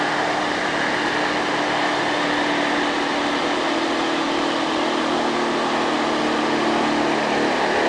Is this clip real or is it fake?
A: real